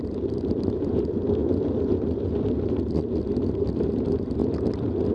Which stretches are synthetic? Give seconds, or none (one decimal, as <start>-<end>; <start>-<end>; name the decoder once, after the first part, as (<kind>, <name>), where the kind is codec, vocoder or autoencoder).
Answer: 0.0-5.1 (vocoder, BigVGAN v2)